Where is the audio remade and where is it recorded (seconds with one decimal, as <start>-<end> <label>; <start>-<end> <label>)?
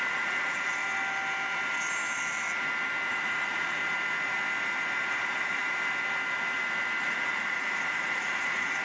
0.0-0.7 remade; 0.7-3.1 recorded; 3.1-3.8 remade; 3.8-5.1 recorded; 5.1-5.6 remade; 5.6-7.0 recorded; 7.0-8.8 remade